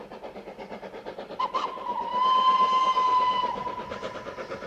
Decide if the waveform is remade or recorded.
recorded